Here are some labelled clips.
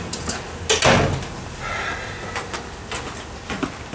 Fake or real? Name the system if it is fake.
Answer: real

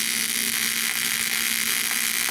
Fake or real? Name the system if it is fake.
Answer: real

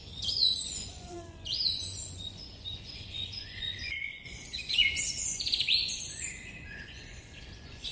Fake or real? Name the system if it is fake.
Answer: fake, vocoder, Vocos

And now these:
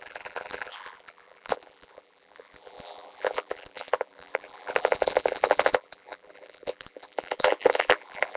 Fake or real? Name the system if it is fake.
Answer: fake, vocoder, BigVGAN v2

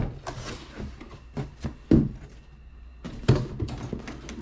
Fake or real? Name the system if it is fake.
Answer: real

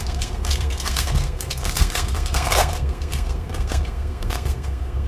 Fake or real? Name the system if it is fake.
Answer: fake, codec, SNAC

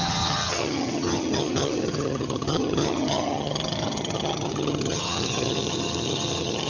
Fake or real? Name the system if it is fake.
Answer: fake, vocoder, HiFi-GAN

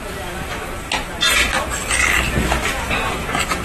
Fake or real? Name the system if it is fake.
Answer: real